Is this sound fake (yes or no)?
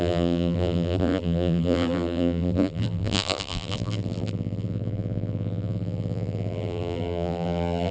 yes